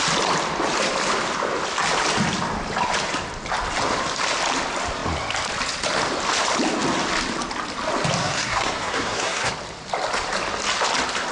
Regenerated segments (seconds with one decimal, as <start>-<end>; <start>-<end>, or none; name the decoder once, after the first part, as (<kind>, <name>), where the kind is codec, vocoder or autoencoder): 8.2-9.5 (codec, SNAC)

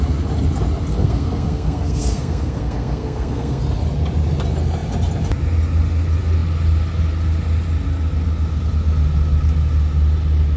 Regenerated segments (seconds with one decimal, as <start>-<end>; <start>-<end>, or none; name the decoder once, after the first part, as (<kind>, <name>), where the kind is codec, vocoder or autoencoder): 0.9-3.6 (codec, SNAC)

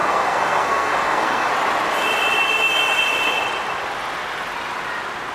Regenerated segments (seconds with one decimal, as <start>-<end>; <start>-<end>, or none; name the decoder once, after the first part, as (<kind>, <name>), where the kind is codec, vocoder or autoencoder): 0.0-1.5 (codec, SNAC)

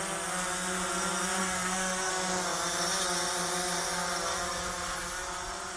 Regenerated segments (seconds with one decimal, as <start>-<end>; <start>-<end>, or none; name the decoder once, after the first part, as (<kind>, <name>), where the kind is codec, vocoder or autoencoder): 1.4-2.1 (codec, SNAC)

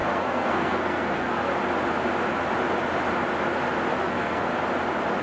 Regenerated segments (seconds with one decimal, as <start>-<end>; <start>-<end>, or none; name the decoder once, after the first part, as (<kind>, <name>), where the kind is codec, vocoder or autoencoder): 0.0-1.5 (codec, SNAC); 4.0-4.5

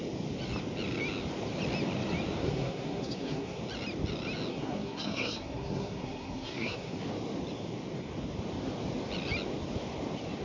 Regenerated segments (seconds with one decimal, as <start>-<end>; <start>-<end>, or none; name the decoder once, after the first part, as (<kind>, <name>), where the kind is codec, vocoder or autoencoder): 2.4-3.6 (codec, SNAC); 4.5-7.0

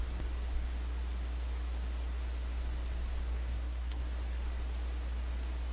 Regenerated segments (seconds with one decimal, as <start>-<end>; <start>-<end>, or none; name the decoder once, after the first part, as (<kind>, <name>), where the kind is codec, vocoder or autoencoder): 3.3-4.0 (codec, SNAC)

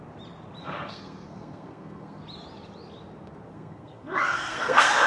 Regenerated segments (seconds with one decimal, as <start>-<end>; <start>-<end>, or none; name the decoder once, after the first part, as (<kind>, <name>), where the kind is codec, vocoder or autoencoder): 0.6-2.2 (codec, SNAC); 3.5-5.1